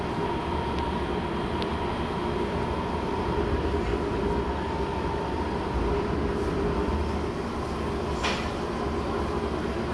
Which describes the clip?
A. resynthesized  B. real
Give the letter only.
B